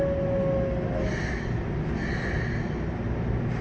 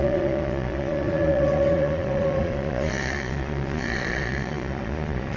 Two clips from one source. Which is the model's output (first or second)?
second